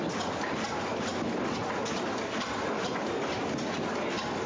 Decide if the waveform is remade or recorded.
recorded